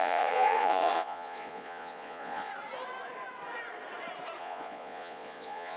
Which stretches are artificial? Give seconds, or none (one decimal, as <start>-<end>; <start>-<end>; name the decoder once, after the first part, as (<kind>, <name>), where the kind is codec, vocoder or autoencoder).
0.0-2.5 (vocoder, Vocos); 4.4-5.8